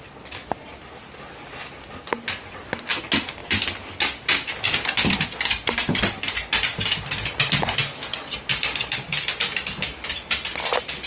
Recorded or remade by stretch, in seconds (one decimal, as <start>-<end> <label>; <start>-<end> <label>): 0.0-11.1 recorded